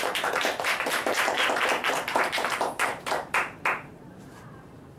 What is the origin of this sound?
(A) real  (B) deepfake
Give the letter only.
B